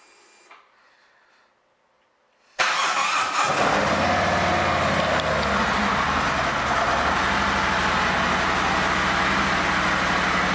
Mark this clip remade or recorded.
recorded